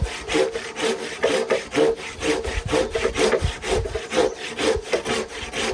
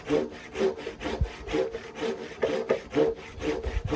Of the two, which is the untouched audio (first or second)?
second